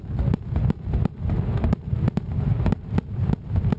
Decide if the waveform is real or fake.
real